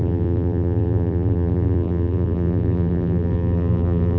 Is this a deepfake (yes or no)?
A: yes